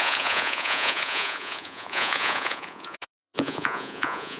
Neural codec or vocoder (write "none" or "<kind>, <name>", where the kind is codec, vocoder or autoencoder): vocoder, Vocos